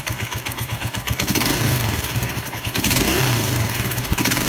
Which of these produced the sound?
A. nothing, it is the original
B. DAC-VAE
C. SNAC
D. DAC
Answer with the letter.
D